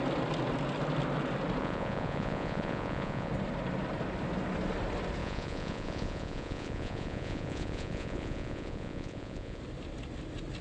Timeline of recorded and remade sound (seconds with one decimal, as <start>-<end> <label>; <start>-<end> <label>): 0.0-1.6 recorded; 1.6-3.3 remade; 3.3-5.2 recorded; 5.2-9.6 remade; 9.6-10.6 recorded